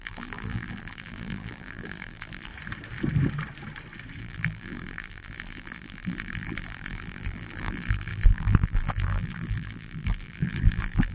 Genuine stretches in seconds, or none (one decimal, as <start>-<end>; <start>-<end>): 2.5-4.2